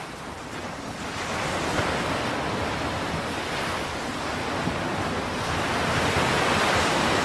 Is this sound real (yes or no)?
yes